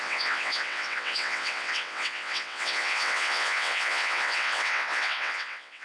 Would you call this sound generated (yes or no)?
yes